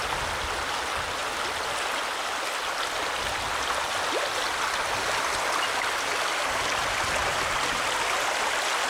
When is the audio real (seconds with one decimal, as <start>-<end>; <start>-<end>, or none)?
0.0-8.9